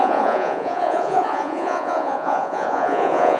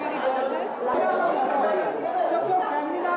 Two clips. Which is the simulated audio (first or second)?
first